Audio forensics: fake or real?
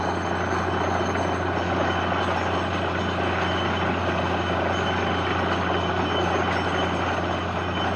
real